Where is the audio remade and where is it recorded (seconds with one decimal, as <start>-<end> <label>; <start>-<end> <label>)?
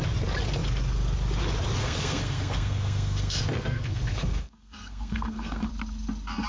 0.0-1.8 recorded; 1.8-5.7 remade; 5.7-6.5 recorded